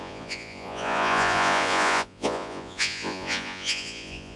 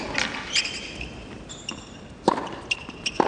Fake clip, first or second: first